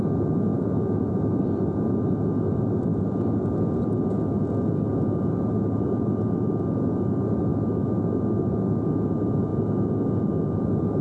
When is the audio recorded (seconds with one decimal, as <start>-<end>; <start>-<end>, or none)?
0.0-0.5; 1.4-7.5; 8.1-11.0